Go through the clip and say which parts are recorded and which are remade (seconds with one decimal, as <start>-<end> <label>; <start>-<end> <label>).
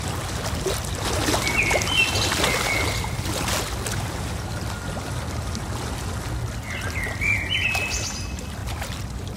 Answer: 0.0-8.6 recorded; 8.6-9.4 remade